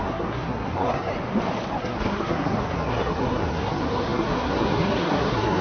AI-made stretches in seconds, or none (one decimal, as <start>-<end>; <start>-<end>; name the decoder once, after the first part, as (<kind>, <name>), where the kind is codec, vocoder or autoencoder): 0.0-1.1 (codec, SNAC); 1.8-5.6

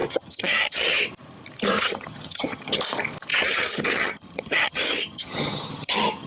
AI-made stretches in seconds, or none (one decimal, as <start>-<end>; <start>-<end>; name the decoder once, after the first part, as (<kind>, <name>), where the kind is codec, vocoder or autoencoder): 0.0-1.0 (vocoder, HiFi-GAN); 1.7-2.8; 3.3-6.3

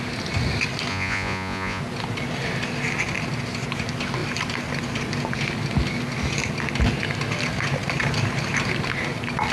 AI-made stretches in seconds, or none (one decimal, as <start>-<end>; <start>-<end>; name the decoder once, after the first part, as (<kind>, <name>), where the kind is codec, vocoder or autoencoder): 0.9-1.8 (vocoder, Vocos)

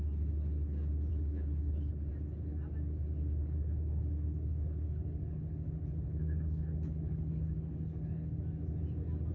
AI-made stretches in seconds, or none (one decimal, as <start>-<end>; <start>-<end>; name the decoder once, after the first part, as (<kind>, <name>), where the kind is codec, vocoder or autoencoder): 1.1-2.1 (codec, HILCodec); 3.4-8.4

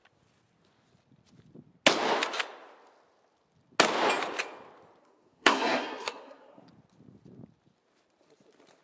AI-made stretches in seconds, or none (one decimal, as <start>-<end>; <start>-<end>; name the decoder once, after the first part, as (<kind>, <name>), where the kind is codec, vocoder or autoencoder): 5.0-6.7 (codec, SNAC)

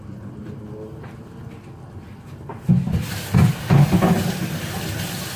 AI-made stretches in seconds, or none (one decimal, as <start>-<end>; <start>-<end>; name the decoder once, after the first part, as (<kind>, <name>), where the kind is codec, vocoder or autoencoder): none